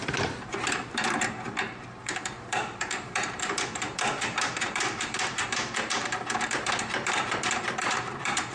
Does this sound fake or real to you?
fake